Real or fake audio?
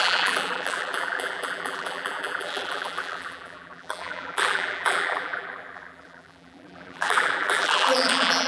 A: fake